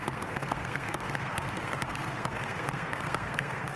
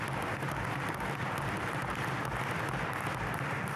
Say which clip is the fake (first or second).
first